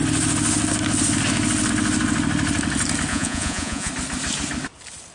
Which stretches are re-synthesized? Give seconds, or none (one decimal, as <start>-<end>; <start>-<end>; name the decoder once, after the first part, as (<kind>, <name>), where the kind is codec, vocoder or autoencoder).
3.1-3.9 (vocoder, Vocos)